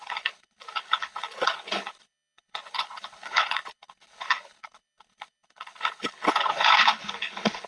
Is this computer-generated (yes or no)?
yes